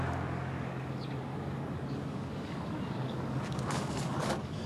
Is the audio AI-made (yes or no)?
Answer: yes